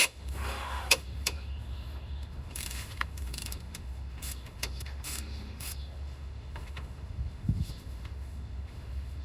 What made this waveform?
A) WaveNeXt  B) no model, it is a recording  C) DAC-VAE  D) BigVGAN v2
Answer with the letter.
C